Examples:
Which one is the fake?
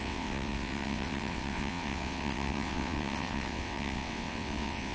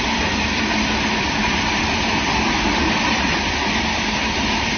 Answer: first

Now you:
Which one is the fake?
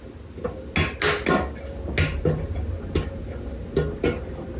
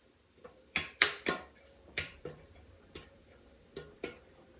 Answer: second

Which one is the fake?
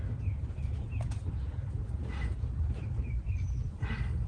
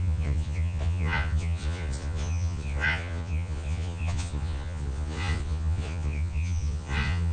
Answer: second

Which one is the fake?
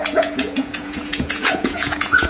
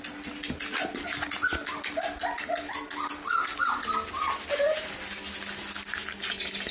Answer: first